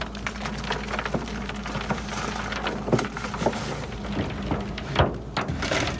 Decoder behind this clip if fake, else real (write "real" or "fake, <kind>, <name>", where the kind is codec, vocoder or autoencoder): real